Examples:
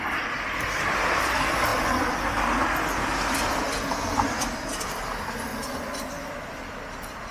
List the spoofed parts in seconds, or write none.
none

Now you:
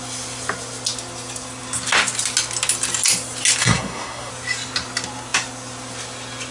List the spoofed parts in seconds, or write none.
3.6-4.3 (codec, SNAC)

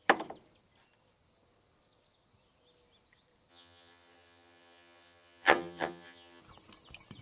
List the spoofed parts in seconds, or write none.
3.5-6.4 (vocoder, HiFi-GAN)

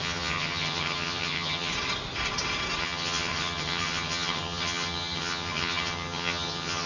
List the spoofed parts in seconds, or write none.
0.0-1.7 (vocoder, HiFi-GAN); 2.8-6.9

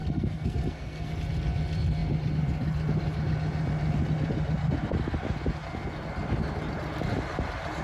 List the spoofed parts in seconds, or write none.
0.0-1.1 (codec, SNAC)